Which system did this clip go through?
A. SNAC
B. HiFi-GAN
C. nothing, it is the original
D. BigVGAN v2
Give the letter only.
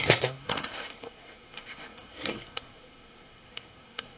A